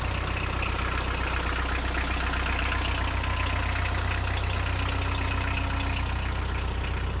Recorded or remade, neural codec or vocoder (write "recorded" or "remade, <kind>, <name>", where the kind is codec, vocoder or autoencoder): recorded